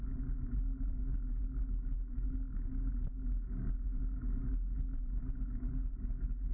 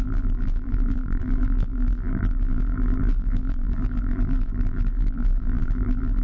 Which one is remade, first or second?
second